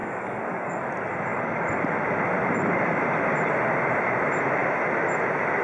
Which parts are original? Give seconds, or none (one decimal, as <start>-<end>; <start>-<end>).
0.9-1.3; 1.8-5.6